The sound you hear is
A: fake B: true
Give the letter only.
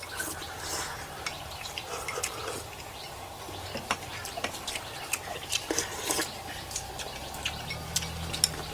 B